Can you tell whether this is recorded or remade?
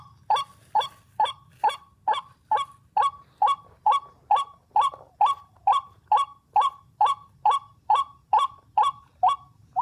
recorded